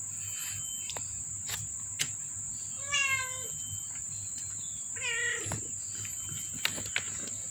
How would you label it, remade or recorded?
recorded